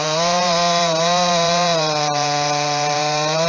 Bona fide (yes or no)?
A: no